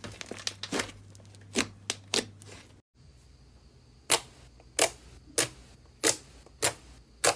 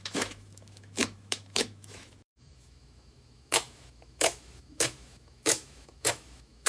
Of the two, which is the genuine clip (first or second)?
first